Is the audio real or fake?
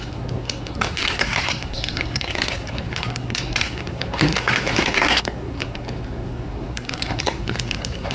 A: fake